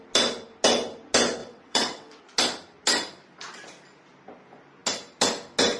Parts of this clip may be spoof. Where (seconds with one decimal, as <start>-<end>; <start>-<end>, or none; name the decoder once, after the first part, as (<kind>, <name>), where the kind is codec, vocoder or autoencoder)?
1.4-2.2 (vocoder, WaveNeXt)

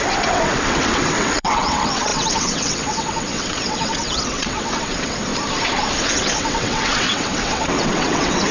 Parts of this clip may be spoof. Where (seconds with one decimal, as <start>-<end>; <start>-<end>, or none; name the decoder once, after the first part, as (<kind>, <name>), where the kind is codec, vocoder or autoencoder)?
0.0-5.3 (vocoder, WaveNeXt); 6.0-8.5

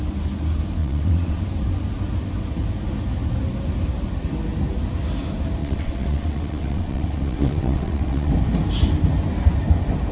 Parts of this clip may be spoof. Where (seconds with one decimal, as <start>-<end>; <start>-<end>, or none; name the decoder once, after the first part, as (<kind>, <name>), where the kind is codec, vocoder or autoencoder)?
0.8-1.4 (vocoder, WaveNeXt); 5.6-8.3

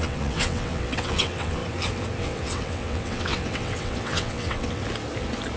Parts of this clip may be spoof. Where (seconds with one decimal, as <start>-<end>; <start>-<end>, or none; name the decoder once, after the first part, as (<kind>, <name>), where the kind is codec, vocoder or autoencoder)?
0.0-1.6 (vocoder, WaveNeXt); 2.2-4.8

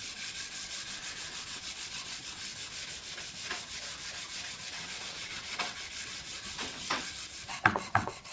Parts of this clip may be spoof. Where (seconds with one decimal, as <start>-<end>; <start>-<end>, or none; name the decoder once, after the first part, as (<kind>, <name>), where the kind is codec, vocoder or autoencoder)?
0.0-2.5 (vocoder, WaveNeXt); 4.6-8.3

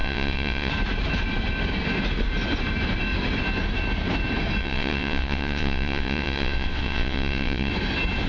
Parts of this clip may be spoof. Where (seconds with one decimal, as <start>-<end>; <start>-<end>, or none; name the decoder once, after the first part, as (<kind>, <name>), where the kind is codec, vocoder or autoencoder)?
0.0-0.7 (vocoder, WaveNeXt); 4.6-7.7